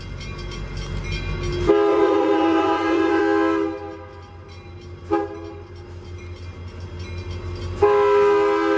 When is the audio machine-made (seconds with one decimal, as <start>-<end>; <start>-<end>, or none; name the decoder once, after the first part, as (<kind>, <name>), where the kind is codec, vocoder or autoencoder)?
1.9-3.2 (vocoder, Vocos)

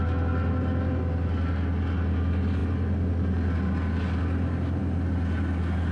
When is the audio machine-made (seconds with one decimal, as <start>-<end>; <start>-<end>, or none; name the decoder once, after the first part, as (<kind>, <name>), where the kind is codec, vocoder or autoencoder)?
none

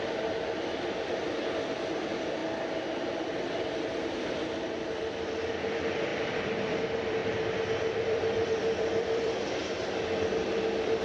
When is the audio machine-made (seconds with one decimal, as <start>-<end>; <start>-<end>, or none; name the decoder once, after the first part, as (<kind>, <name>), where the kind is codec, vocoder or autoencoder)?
0.0-2.4 (vocoder, BigVGAN v2); 3.2-7.2; 8.0-9.6; 10.3-11.0

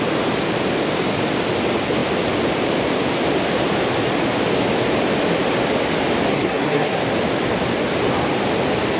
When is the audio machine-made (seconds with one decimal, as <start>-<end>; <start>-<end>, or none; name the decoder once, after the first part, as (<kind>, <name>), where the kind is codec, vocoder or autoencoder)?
6.3-7.0 (codec, SNAC)

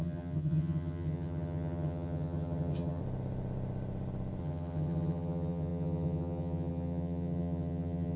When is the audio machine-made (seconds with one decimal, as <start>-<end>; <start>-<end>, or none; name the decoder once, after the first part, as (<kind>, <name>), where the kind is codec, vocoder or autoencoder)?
0.0-3.0 (vocoder, HiFi-GAN); 4.4-8.2

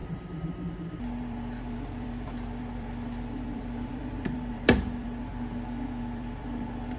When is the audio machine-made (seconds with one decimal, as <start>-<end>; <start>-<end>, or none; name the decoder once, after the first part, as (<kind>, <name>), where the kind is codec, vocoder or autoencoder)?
0.0-5.3 (vocoder, BigVGAN v2); 6.0-7.0

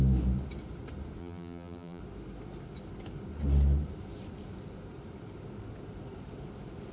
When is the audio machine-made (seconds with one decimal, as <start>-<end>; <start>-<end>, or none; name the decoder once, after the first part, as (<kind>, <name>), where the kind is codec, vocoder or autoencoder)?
1.2-2.0 (vocoder, BigVGAN v2)

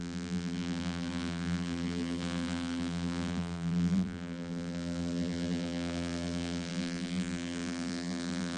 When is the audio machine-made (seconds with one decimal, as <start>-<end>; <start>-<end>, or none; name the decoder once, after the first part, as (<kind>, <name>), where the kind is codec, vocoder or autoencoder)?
0.0-8.6 (vocoder, BigVGAN v2)